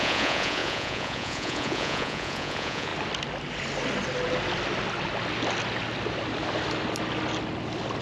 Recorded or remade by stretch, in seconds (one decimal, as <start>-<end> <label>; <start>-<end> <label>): 0.0-2.9 remade; 2.9-8.0 recorded